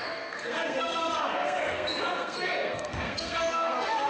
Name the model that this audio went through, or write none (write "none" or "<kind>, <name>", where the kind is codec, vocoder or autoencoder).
codec, SNAC